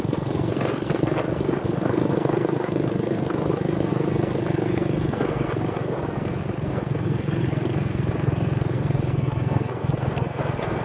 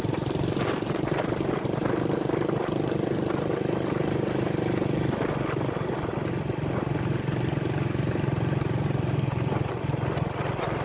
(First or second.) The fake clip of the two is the first